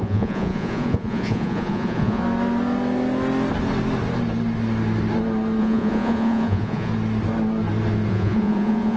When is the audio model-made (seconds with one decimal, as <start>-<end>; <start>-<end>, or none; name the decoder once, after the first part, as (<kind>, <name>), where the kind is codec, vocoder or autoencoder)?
0.0-2.2 (vocoder, Vocos); 5.6-6.9; 8.1-9.0